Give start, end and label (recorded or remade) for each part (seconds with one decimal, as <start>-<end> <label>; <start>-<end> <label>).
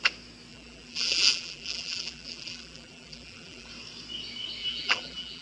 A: 0.0-0.5 recorded; 0.5-3.7 remade; 3.7-4.6 recorded; 4.6-5.4 remade